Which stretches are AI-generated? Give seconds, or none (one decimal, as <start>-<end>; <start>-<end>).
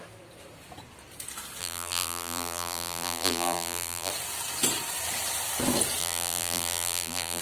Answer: 1.6-4.1; 6.0-7.4